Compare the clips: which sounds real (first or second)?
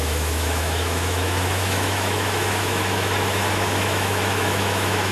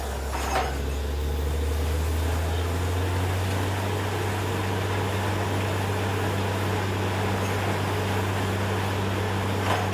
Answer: second